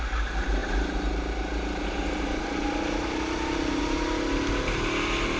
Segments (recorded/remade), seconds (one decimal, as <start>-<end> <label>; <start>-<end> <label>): 0.0-5.4 recorded